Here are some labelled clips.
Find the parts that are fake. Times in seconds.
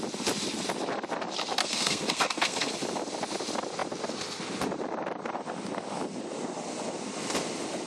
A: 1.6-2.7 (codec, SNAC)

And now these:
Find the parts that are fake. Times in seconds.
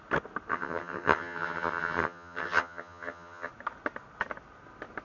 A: 0.5-3.5 (vocoder, HiFi-GAN)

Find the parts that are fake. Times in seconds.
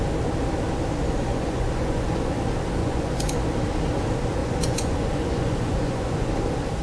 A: 1.3-2.4 (vocoder, Vocos); 2.8-3.3; 4.4-6.3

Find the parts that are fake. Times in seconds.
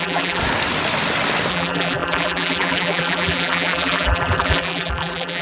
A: 0.0-0.4 (vocoder, BigVGAN v2); 1.5-5.4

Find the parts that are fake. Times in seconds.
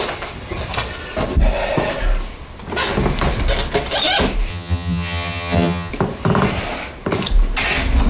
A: 4.5-5.9 (vocoder, HiFi-GAN)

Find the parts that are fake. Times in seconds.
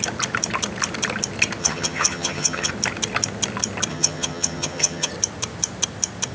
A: 1.6-2.7 (vocoder, HiFi-GAN); 3.9-5.1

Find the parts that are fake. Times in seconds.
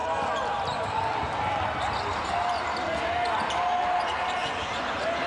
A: 4.4-5.3 (vocoder, BigVGAN v2)